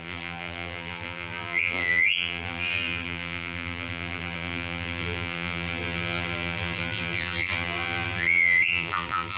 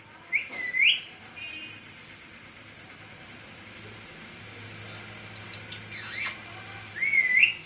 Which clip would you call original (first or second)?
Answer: second